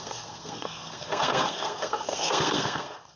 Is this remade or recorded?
remade